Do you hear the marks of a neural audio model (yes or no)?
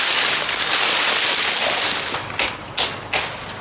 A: no